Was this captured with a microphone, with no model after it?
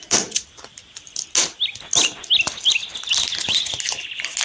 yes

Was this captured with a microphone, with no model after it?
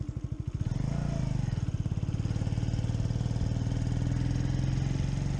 yes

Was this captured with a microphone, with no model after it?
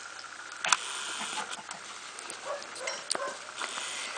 yes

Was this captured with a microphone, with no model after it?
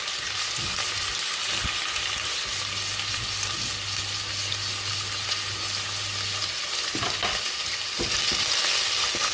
yes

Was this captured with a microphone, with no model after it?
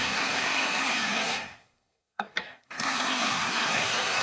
no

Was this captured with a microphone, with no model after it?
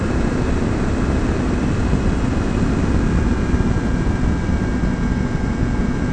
yes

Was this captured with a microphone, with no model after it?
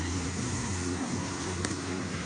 no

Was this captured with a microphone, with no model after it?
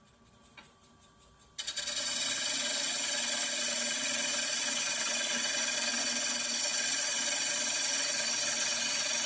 yes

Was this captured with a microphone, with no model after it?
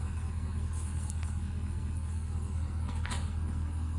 no